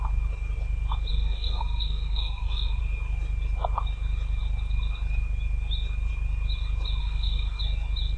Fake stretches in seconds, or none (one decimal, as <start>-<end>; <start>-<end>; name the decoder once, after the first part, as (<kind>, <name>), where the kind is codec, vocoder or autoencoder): 1.1-2.8 (codec, SNAC); 7.0-7.6